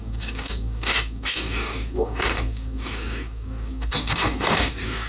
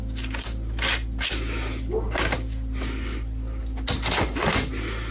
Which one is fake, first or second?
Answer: first